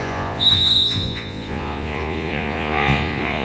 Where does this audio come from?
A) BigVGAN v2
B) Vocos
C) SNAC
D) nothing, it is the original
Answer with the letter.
B